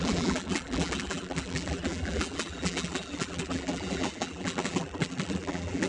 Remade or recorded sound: remade